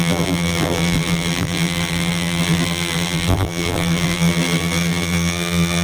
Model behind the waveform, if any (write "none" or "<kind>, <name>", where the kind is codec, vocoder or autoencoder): vocoder, BigVGAN v2